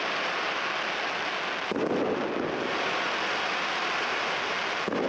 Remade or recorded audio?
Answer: recorded